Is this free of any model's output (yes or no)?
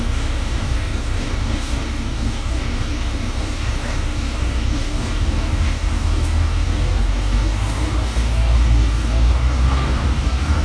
no